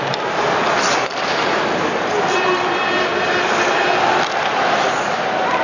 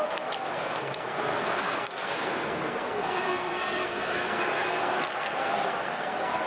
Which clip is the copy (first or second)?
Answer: second